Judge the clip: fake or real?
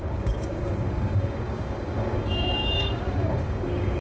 fake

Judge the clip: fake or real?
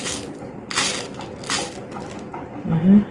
real